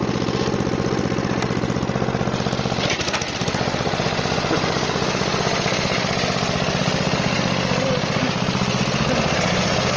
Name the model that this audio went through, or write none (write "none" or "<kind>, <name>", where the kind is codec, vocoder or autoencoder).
none